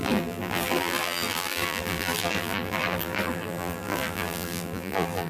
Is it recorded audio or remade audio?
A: remade